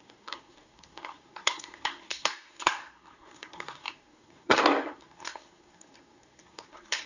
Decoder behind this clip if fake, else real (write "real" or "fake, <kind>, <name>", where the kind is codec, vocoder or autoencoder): fake, codec, SNAC